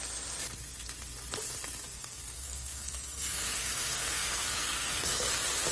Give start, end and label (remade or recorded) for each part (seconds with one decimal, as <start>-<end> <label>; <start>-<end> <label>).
0.0-1.9 recorded; 1.9-5.3 remade; 5.3-5.7 recorded